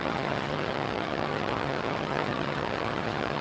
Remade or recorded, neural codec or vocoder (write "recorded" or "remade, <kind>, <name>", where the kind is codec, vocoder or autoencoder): remade, vocoder, HiFi-GAN